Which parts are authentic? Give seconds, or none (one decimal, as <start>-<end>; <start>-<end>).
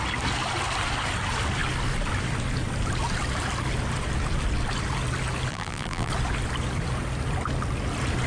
0.0-5.5; 6.1-8.3